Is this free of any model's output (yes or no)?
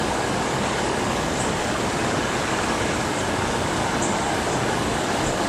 no